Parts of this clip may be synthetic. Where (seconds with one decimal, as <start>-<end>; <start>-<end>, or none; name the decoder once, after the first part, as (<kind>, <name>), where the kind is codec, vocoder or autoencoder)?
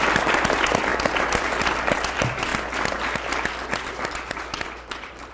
0.0-0.9 (vocoder, BigVGAN v2); 1.4-2.5; 4.1-5.3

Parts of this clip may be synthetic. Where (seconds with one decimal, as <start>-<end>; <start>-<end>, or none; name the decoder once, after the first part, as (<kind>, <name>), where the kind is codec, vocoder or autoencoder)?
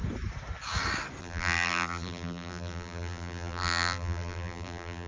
1.2-5.1 (vocoder, BigVGAN v2)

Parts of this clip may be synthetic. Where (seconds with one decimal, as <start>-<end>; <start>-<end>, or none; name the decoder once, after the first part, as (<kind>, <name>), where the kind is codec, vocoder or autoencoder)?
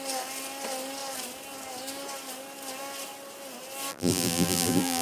3.9-5.0 (vocoder, BigVGAN v2)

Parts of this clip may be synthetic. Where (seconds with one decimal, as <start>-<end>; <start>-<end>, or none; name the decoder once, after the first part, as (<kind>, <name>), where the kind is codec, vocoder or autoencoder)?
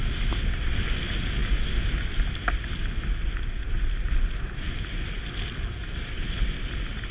none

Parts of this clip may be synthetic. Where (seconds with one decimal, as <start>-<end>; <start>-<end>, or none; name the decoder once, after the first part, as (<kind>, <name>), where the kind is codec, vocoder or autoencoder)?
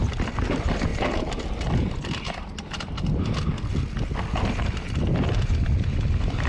0.9-1.6 (vocoder, BigVGAN v2)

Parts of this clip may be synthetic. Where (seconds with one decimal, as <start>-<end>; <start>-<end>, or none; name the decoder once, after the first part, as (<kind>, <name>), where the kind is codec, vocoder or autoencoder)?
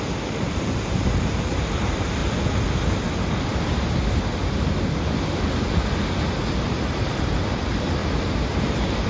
0.0-2.2 (vocoder, BigVGAN v2); 7.0-8.0; 8.5-9.1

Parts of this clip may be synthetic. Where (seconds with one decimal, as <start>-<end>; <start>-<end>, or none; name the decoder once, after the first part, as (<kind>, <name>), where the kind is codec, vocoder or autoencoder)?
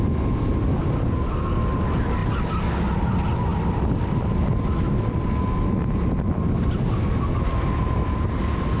none